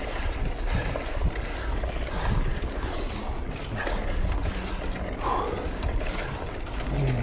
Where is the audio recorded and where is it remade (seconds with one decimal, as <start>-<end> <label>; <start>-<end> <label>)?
0.0-7.2 recorded